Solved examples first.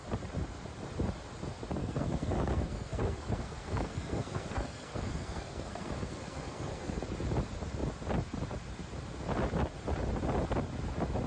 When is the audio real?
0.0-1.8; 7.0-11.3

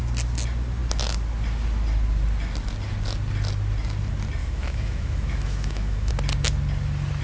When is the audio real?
0.0-4.4; 6.1-7.2

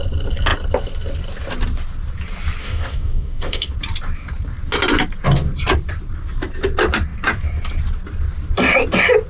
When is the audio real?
0.0-2.6; 3.7-9.3